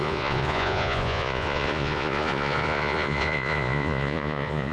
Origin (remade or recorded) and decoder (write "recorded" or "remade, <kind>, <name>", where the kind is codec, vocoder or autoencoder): remade, vocoder, Vocos